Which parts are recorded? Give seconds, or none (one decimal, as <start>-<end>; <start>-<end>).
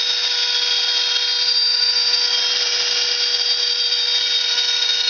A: 0.0-5.1